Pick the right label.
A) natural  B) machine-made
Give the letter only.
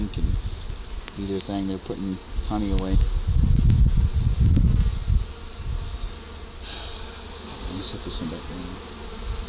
A